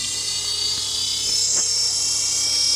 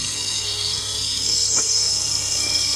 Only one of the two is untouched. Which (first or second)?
first